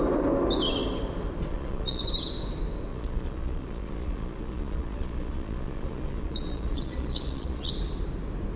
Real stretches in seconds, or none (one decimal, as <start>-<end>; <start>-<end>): 0.0-1.5; 2.0-2.9; 7.7-8.6